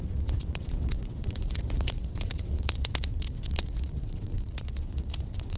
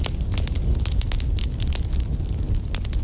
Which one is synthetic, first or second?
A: first